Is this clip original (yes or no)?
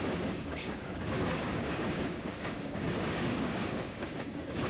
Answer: no